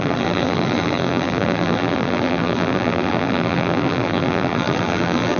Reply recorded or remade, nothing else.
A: remade